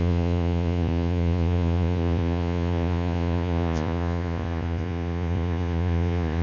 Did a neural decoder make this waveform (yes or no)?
yes